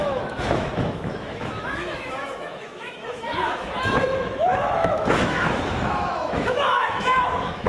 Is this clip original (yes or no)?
no